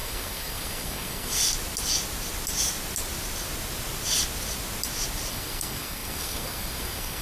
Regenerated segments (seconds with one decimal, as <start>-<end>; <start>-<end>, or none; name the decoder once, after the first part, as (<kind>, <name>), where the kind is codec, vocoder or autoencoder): 0.0-1.4 (codec, SNAC); 5.3-7.2